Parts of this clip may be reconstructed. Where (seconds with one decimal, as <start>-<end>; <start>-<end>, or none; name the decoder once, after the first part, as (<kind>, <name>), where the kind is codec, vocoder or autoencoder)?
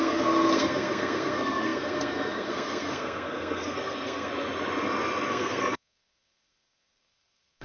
0.0-4.3 (codec, SNAC); 5.3-7.6